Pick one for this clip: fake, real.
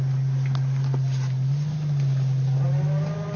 real